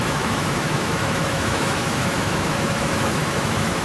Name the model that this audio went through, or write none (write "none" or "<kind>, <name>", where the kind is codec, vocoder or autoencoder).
autoencoder, DAC-VAE